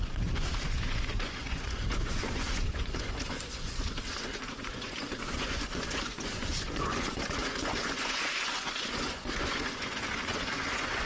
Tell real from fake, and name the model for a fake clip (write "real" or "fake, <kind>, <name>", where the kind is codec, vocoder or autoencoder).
fake, vocoder, Vocos